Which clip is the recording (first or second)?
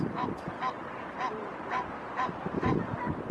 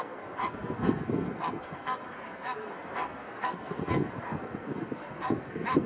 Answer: first